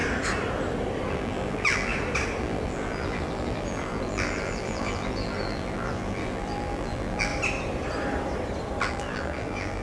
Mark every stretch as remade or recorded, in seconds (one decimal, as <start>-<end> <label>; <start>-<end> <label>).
0.0-1.1 recorded; 1.1-1.9 remade; 1.9-2.4 recorded; 2.4-7.3 remade; 7.3-8.8 recorded; 8.8-9.8 remade